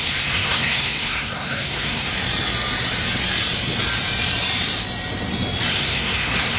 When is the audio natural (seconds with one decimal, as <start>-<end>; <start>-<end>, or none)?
2.1-5.7